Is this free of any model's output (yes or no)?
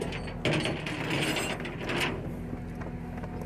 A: yes